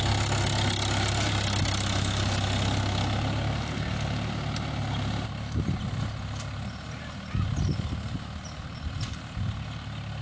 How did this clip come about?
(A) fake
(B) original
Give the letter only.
B